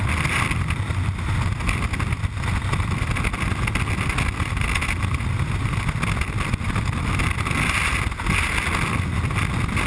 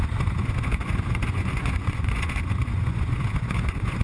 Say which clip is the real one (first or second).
first